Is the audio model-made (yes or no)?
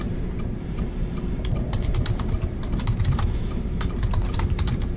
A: yes